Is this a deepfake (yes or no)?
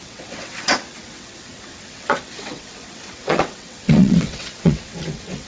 yes